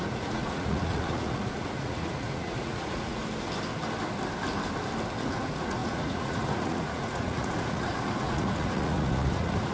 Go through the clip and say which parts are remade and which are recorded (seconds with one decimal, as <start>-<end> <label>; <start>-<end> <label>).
0.0-3.2 remade; 3.2-5.3 recorded; 5.3-9.7 remade